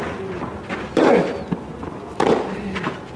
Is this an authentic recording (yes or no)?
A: yes